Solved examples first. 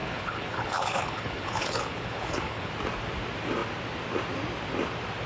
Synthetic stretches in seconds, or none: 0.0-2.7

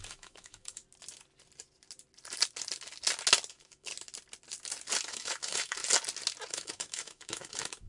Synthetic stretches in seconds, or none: 0.0-0.8; 3.5-3.9; 5.1-5.8; 6.5-7.9

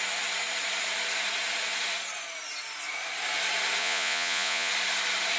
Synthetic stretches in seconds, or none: 3.8-4.7